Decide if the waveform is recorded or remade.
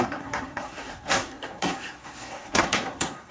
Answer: remade